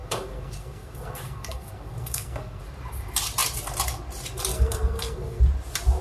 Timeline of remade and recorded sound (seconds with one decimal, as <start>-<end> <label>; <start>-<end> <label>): 0.0-2.6 remade; 2.6-4.5 recorded; 4.5-5.4 remade; 5.4-6.0 recorded